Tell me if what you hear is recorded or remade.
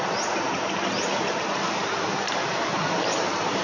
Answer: recorded